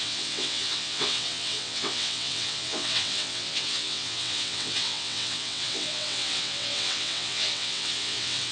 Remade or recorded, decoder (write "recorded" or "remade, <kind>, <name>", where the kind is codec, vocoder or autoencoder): remade, vocoder, WaveNeXt